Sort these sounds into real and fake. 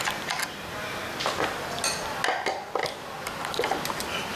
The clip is real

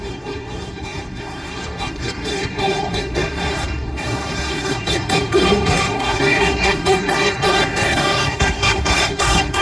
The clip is fake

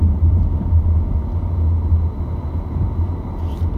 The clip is real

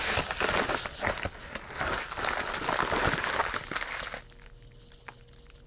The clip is real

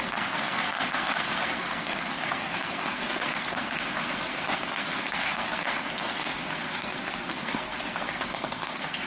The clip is fake